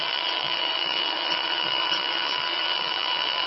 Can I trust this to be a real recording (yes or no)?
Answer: no